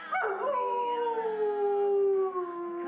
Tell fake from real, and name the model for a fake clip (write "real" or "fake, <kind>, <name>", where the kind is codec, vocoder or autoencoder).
real